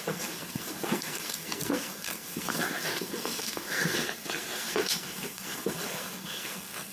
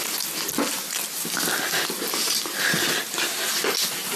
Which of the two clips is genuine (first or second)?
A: second